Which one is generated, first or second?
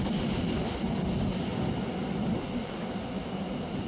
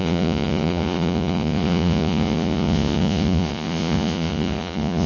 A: second